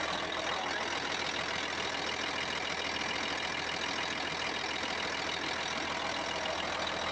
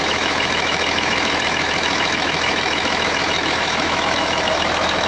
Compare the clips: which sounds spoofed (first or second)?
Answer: second